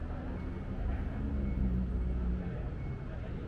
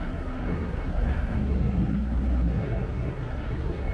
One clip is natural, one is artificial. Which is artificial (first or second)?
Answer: second